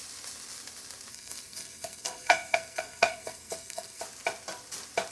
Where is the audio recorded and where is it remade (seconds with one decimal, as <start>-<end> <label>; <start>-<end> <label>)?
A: 0.0-1.1 recorded; 1.1-4.0 remade; 4.0-5.1 recorded